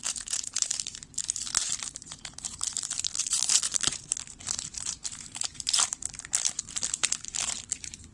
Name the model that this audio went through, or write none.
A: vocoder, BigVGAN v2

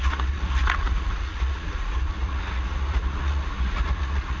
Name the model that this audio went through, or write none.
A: vocoder, Vocos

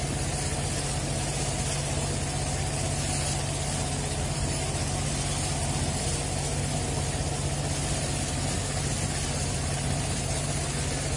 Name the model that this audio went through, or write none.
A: none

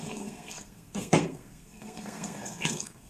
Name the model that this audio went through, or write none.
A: codec, SNAC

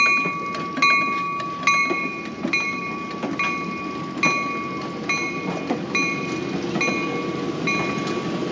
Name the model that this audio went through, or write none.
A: none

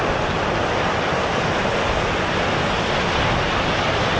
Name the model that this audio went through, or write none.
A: none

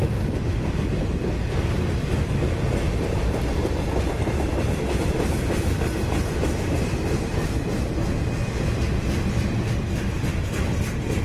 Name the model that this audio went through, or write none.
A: none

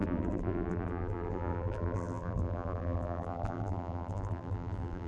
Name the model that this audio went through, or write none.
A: vocoder, BigVGAN v2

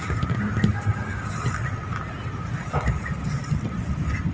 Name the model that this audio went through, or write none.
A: none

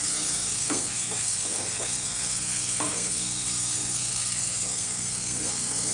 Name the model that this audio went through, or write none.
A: codec, SNAC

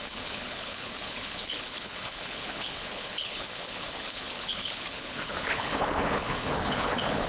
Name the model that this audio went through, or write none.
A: codec, HILCodec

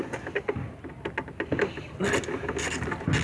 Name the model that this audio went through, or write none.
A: none